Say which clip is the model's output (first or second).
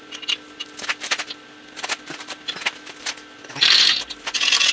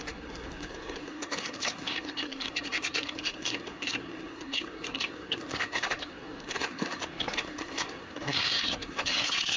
second